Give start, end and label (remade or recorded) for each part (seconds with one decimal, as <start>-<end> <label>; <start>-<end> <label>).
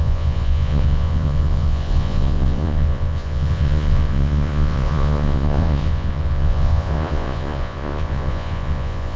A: 0.0-9.2 remade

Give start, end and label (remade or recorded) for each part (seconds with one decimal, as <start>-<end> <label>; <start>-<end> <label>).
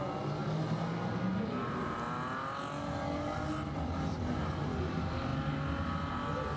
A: 0.0-6.6 recorded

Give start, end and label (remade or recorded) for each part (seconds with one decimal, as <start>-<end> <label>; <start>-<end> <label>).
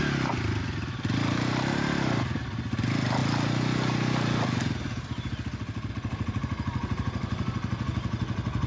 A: 0.0-8.7 recorded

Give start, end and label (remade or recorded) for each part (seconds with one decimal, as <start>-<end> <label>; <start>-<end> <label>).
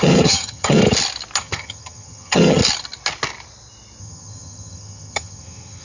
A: 0.0-0.8 remade; 0.8-1.4 recorded; 1.4-2.6 remade; 2.6-4.0 recorded; 4.0-5.8 remade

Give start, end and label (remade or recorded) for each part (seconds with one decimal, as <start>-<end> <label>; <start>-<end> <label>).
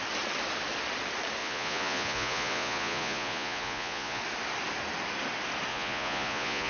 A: 0.0-1.4 recorded; 1.4-4.2 remade; 4.2-5.7 recorded; 5.7-6.7 remade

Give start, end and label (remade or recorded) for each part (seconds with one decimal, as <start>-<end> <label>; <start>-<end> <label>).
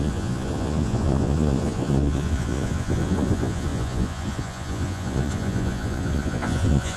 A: 0.0-7.0 remade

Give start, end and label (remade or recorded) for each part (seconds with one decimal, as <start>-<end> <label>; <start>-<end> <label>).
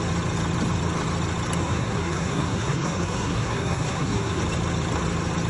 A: 0.0-1.6 recorded; 1.6-4.4 remade; 4.4-5.5 recorded